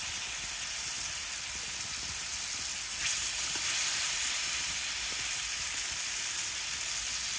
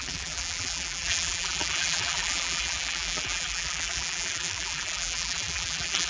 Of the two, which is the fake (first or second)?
second